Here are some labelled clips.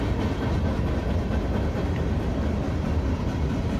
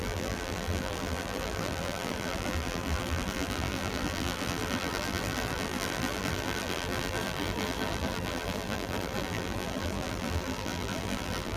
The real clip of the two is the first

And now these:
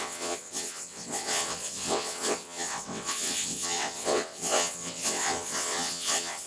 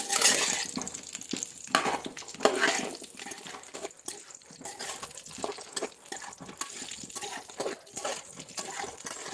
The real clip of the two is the second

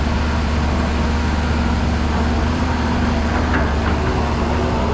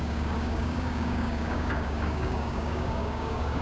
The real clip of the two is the first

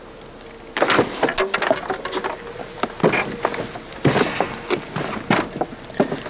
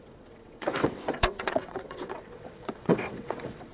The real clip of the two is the first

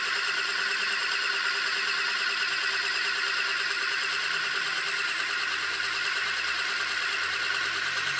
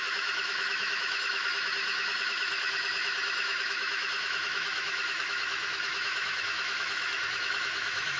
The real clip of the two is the first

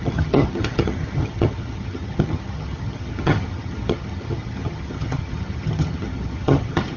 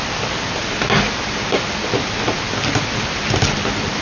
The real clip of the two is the second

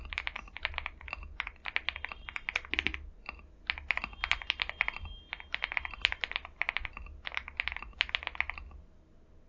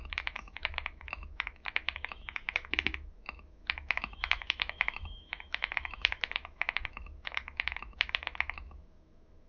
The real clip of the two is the first